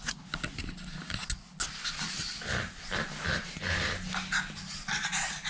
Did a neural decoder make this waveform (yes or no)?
no